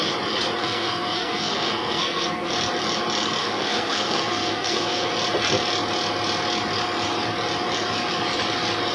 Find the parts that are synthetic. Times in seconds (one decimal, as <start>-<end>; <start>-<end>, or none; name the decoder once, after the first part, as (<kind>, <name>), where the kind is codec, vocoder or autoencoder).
0.6-2.5 (codec, SNAC); 3.4-5.1